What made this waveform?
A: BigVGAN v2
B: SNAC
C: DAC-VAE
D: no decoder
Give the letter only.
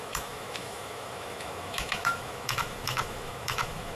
C